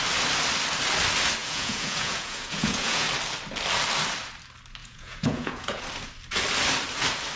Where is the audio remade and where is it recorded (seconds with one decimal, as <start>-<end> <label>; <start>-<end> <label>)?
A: 0.0-1.4 recorded; 1.4-3.1 remade; 3.1-4.8 recorded; 4.8-5.8 remade; 5.8-7.4 recorded